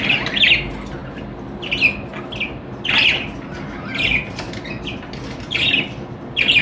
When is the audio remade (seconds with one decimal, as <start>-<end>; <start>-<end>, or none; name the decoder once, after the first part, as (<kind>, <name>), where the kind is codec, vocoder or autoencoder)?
none